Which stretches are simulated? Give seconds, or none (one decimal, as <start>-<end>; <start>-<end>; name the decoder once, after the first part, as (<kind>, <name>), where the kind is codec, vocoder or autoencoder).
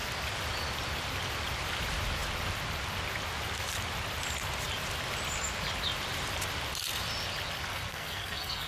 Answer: 7.7-8.7 (codec, SNAC)